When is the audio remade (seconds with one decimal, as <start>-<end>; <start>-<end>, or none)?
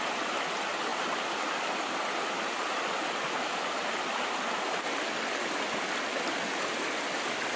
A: none